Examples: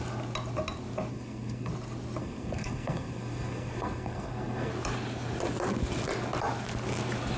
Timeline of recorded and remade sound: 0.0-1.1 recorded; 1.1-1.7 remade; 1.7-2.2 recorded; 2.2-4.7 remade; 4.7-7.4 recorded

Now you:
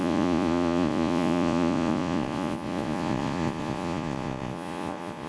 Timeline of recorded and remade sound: 0.0-5.3 remade

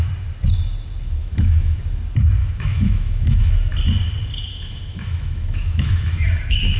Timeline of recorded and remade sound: 0.0-1.2 recorded; 1.2-1.8 remade; 1.8-2.4 recorded; 2.4-3.5 remade; 3.5-4.5 recorded; 4.5-6.8 remade

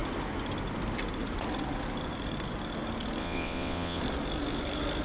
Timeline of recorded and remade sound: 0.0-3.2 recorded; 3.2-4.0 remade; 4.0-5.0 recorded

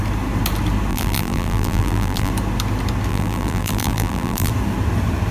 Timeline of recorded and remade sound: 0.0-0.9 recorded; 0.9-2.3 remade; 2.3-3.1 recorded; 3.1-4.5 remade; 4.5-5.3 recorded